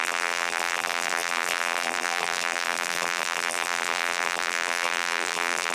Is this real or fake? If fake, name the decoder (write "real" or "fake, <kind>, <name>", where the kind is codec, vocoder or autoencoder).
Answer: fake, vocoder, BigVGAN v2